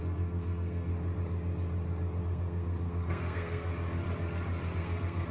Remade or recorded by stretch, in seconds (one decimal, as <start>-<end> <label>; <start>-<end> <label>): 0.0-0.9 remade; 0.9-2.2 recorded; 2.2-3.7 remade; 3.7-4.8 recorded; 4.8-5.3 remade